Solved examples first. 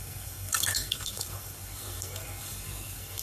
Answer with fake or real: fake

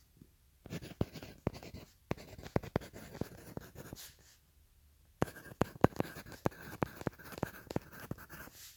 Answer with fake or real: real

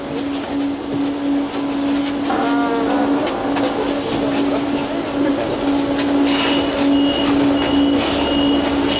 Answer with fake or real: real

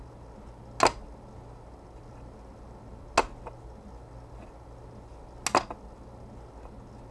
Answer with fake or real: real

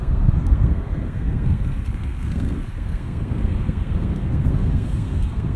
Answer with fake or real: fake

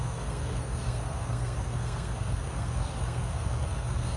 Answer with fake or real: fake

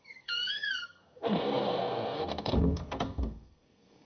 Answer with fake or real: fake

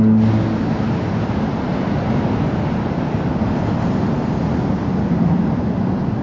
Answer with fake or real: real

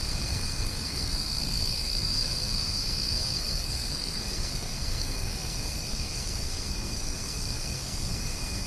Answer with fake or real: fake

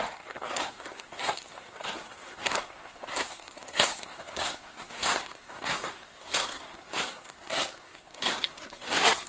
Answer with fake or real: fake